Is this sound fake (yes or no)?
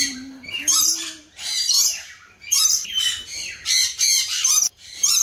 yes